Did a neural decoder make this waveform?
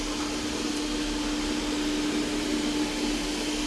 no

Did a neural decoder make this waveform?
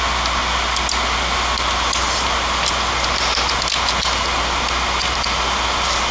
no